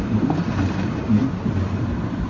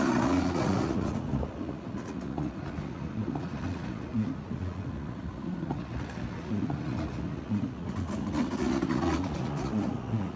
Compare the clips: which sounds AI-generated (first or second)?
second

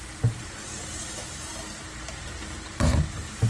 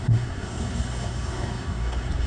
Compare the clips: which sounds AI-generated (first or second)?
second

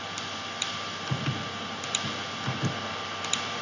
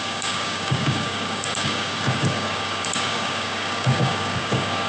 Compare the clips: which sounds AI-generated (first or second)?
second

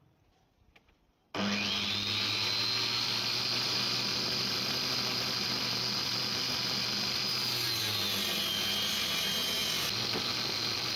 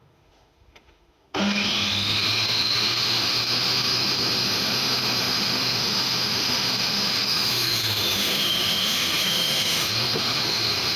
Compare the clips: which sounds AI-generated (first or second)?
second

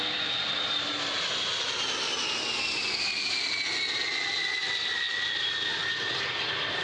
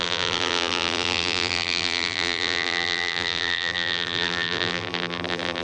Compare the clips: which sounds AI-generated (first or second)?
second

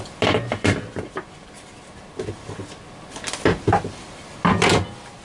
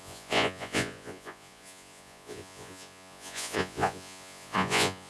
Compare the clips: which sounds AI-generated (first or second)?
second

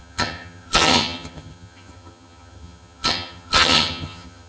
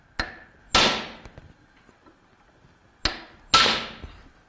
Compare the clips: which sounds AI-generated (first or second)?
first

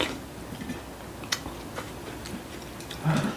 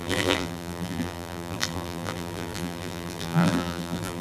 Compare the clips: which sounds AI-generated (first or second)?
second